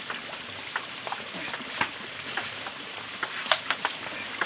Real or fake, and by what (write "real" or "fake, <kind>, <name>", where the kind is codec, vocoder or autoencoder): real